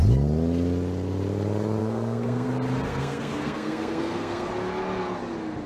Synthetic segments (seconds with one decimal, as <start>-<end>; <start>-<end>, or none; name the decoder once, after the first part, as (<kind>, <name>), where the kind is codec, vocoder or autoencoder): 1.8-2.5 (codec, SNAC); 2.9-4.5